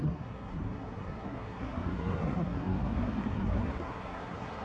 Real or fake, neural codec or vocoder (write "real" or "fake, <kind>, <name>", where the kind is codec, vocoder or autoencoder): fake, codec, SNAC